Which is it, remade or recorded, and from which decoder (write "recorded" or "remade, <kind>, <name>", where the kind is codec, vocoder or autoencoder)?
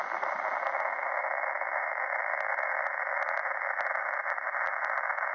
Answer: recorded